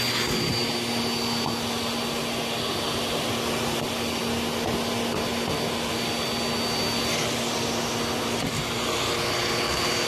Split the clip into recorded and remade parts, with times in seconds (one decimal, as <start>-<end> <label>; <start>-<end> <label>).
0.0-10.1 recorded